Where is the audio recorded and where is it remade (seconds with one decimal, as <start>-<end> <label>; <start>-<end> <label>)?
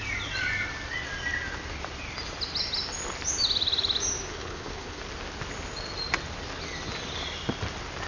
0.0-4.3 recorded; 4.3-5.0 remade; 5.0-8.1 recorded